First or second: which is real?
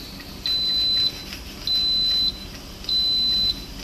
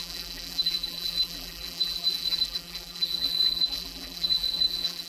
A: first